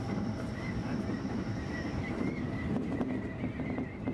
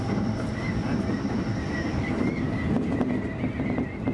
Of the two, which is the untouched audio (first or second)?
second